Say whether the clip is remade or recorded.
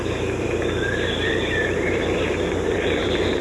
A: remade